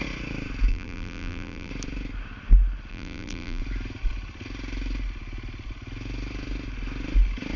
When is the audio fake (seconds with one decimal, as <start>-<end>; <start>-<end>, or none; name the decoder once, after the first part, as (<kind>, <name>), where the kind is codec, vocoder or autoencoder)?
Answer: 0.7-1.7 (vocoder, BigVGAN v2); 2.9-3.6